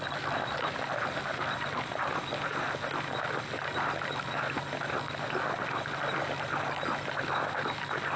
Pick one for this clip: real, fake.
real